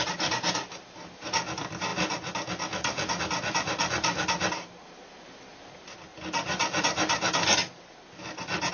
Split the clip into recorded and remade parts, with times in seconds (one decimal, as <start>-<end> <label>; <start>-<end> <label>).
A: 0.0-8.7 recorded